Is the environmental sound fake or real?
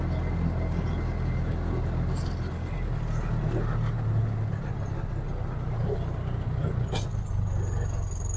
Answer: real